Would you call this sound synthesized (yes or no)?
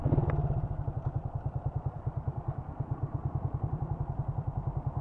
no